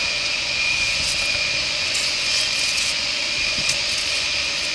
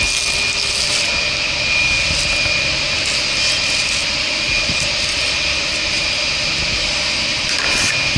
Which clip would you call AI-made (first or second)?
first